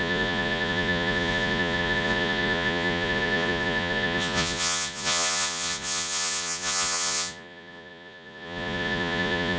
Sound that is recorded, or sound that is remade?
remade